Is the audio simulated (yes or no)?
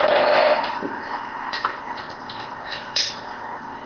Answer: yes